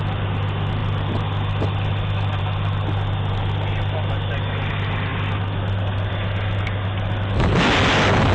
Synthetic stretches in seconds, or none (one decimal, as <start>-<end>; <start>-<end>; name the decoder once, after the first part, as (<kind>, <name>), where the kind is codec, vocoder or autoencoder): none